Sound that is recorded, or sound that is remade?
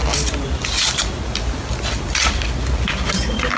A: recorded